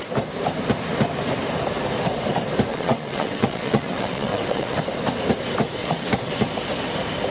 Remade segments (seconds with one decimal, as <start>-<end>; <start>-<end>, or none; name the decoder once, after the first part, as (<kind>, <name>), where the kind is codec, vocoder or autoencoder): 2.7-4.8 (vocoder, WaveNeXt); 5.8-6.4

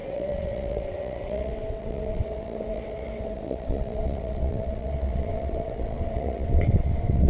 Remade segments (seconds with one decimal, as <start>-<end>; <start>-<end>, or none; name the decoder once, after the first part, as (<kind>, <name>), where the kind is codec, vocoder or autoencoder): 0.0-7.3 (vocoder, WaveNeXt)